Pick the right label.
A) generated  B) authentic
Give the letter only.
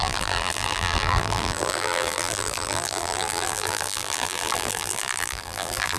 A